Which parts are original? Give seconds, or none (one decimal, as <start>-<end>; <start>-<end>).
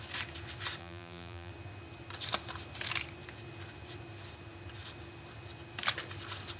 0.0-0.8; 1.5-6.6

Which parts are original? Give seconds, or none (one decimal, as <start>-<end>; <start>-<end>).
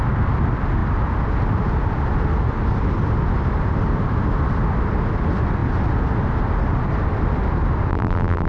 0.0-7.9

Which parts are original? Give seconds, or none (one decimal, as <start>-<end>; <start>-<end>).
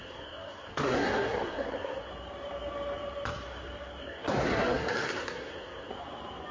2.1-4.0; 5.9-6.5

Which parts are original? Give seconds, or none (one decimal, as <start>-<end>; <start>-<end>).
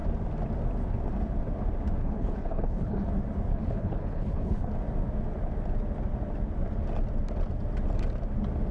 0.0-2.0; 3.1-3.5; 4.7-8.7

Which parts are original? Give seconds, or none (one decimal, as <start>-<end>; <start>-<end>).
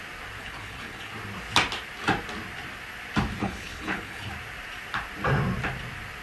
0.0-0.4; 1.1-3.4; 4.3-6.2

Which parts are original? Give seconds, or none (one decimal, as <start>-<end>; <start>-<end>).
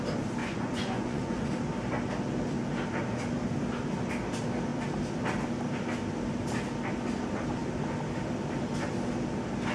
0.0-0.4; 1.5-9.7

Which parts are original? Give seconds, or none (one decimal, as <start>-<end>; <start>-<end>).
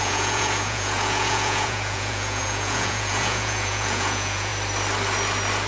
4.5-5.7